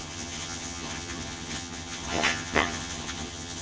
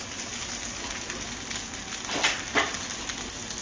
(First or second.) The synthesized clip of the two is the first